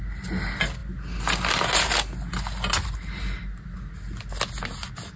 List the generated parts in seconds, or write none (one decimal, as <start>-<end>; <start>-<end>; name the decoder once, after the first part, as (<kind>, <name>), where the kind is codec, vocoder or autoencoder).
none